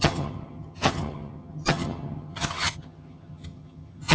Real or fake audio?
fake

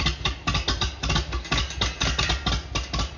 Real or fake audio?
real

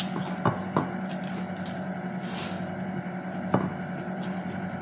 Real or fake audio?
real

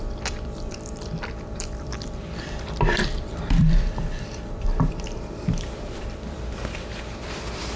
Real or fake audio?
fake